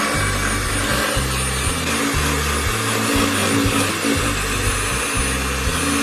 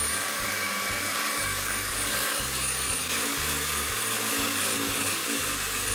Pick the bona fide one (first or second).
first